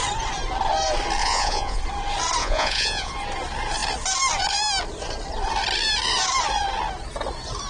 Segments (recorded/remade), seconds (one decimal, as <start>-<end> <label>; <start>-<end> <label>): 0.0-1.2 recorded; 1.2-1.8 remade; 1.8-2.4 recorded; 2.4-3.1 remade; 3.1-7.7 recorded